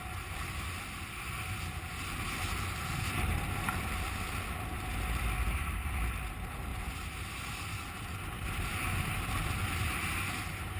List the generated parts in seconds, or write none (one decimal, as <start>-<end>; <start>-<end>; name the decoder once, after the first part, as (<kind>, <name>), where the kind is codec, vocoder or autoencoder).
6.7-7.5 (vocoder, BigVGAN v2); 9.9-10.8

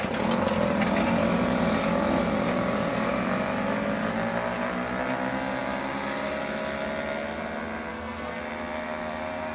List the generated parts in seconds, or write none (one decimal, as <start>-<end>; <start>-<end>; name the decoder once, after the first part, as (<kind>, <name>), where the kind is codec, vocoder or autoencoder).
7.9-8.4 (codec, SNAC)

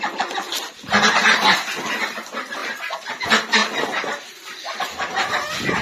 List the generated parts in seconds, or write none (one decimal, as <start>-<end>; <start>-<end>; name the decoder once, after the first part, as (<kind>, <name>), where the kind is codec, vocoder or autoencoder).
none

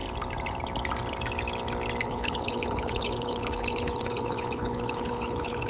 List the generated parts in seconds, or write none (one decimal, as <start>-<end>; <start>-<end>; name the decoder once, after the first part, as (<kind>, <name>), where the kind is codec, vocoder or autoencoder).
2.0-5.7 (codec, HILCodec)

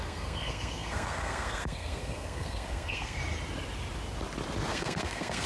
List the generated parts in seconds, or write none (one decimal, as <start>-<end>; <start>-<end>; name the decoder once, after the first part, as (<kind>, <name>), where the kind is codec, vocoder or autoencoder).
0.0-3.2 (codec, SNAC); 4.7-5.5

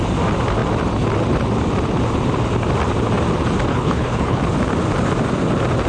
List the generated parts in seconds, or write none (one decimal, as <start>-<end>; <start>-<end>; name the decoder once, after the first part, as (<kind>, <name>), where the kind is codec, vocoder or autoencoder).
3.7-4.4 (codec, HILCodec)